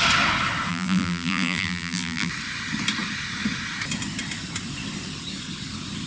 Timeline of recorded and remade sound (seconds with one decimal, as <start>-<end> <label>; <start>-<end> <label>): 0.0-0.7 recorded; 0.7-2.3 remade; 2.3-6.1 recorded